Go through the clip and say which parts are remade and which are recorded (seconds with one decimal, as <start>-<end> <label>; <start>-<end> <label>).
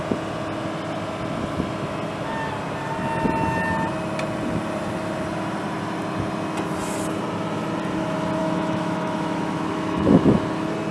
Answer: 0.0-8.4 recorded; 8.4-10.4 remade; 10.4-10.9 recorded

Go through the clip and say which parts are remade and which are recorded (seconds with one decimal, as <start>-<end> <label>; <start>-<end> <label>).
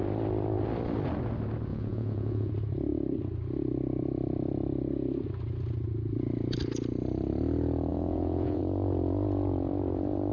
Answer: 0.0-1.7 recorded; 1.7-2.5 remade; 2.5-7.9 recorded; 7.9-8.6 remade; 8.6-10.3 recorded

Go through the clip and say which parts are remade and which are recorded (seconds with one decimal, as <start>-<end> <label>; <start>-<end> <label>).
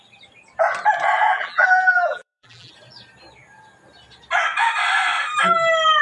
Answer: 0.0-1.3 recorded; 1.3-2.7 remade; 2.7-6.0 recorded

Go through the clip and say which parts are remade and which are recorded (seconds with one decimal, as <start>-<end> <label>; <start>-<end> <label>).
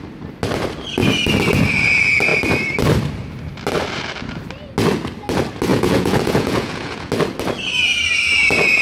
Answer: 0.0-5.7 recorded; 5.7-7.1 remade; 7.1-8.8 recorded